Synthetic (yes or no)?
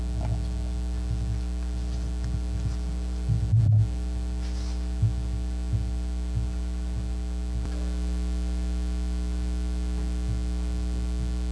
no